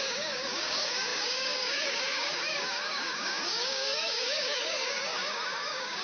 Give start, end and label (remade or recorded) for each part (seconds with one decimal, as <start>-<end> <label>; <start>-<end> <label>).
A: 0.0-6.0 remade

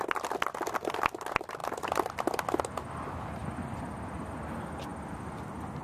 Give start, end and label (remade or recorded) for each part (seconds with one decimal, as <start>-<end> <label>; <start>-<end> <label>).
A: 0.0-5.8 recorded

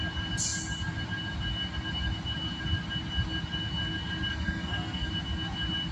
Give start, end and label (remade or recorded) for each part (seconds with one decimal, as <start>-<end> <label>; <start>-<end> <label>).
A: 0.0-4.3 recorded; 4.3-5.1 remade; 5.1-5.9 recorded

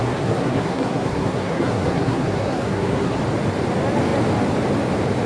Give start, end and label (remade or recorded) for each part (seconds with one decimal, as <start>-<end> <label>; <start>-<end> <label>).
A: 0.0-3.2 remade; 3.2-5.3 recorded

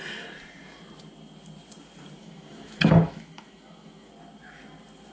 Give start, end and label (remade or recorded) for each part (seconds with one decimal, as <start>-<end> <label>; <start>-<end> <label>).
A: 0.0-2.2 recorded; 2.2-4.1 remade; 4.1-5.1 recorded

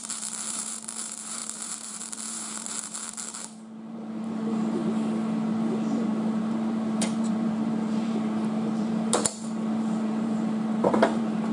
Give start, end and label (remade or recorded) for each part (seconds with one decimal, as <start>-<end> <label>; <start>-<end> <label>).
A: 0.0-4.8 remade; 4.8-5.6 recorded; 5.6-11.5 remade

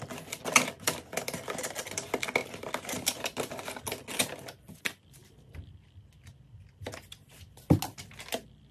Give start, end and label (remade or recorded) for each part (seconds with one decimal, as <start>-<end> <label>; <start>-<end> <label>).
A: 0.0-8.7 recorded